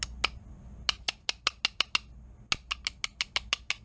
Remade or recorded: recorded